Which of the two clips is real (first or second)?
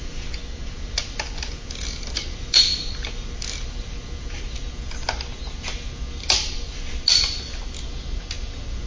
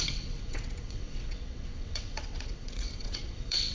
first